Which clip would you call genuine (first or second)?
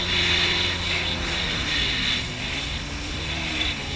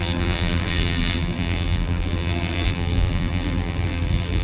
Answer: first